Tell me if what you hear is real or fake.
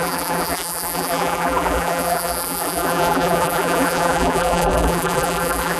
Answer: fake